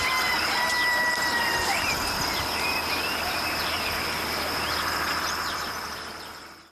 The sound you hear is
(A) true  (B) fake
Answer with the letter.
B